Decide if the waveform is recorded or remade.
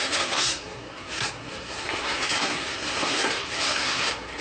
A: remade